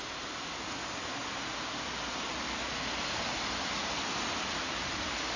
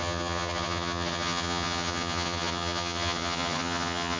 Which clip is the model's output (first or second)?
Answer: second